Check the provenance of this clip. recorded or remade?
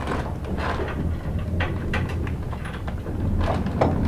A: recorded